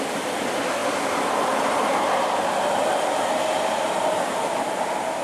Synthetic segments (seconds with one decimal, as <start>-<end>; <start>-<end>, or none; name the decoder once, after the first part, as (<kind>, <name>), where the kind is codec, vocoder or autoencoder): none